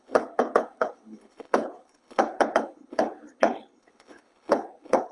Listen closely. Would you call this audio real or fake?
fake